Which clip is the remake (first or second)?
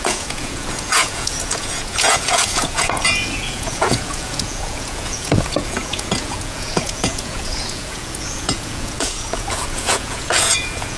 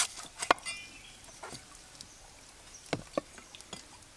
first